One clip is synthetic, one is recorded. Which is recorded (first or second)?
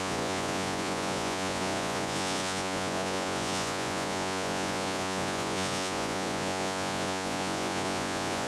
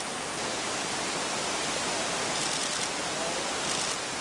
second